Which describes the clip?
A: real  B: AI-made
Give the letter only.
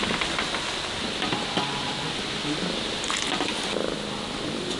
A